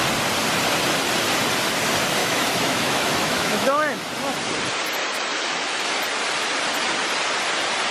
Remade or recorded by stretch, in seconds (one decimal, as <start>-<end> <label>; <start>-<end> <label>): 0.0-2.2 recorded; 2.2-4.0 remade; 4.0-5.0 recorded; 5.0-5.9 remade; 5.9-7.9 recorded